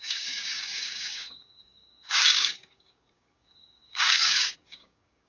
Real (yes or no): no